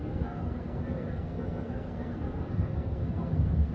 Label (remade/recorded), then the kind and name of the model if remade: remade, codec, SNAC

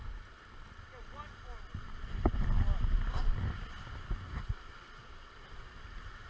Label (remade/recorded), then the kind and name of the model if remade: recorded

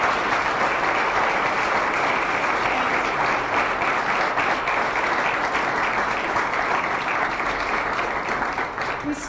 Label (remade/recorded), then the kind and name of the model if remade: recorded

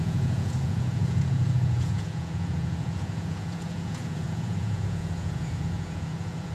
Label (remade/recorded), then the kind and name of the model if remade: remade, vocoder, Vocos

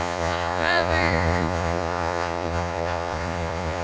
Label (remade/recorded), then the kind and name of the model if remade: remade, vocoder, Vocos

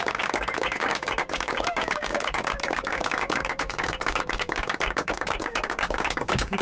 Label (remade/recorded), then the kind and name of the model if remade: remade, codec, DAC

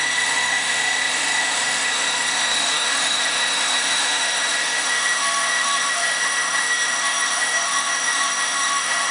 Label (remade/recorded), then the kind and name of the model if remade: remade, autoencoder, DAC-VAE